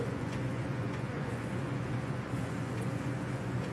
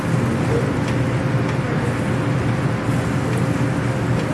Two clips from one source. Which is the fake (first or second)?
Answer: first